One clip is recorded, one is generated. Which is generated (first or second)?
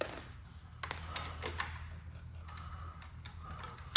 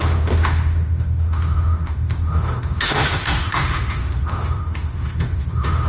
second